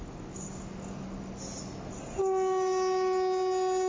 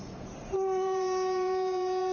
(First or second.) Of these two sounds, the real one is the first